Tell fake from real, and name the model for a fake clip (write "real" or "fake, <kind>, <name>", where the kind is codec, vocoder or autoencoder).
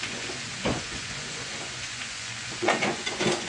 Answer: fake, vocoder, Vocos